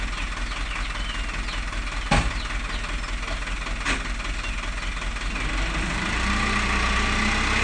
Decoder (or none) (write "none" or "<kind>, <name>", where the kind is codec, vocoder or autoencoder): none